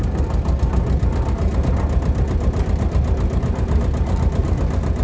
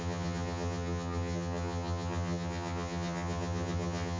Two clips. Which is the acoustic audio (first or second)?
first